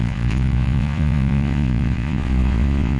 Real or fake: fake